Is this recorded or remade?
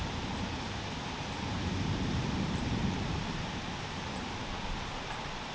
remade